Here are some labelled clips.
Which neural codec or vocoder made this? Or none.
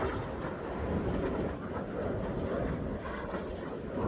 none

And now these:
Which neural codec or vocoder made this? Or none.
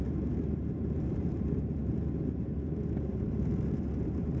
vocoder, BigVGAN v2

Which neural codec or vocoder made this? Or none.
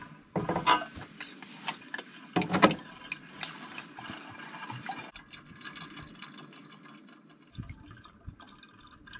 none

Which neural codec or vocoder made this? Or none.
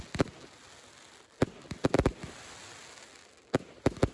none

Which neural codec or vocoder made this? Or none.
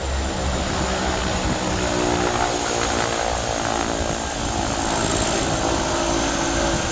none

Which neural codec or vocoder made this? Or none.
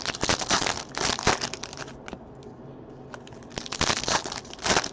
none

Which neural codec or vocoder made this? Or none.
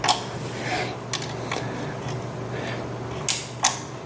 none